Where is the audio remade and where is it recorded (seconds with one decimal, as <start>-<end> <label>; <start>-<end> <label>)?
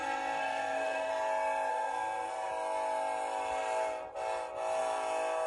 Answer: 0.0-1.1 remade; 1.1-1.7 recorded; 1.7-2.5 remade; 2.5-5.5 recorded